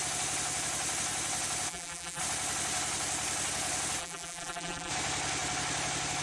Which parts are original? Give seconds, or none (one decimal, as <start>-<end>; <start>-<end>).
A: 0.0-1.7; 2.2-4.0; 4.9-6.2